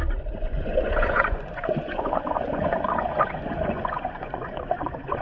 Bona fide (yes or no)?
no